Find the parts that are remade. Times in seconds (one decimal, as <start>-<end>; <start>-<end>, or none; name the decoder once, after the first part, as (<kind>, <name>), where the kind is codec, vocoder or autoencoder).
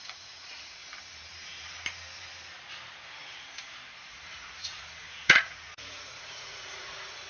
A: 0.0-0.8 (vocoder, Vocos); 4.3-7.3